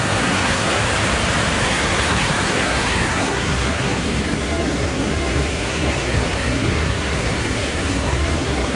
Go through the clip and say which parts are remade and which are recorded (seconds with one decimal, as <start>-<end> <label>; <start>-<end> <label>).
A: 0.0-0.8 remade; 0.8-1.6 recorded; 1.6-8.8 remade